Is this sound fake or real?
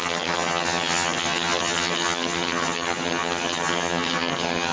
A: fake